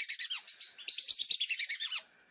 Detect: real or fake real